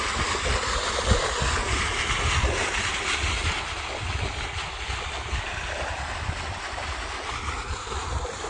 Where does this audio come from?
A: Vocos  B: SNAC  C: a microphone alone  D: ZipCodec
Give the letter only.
C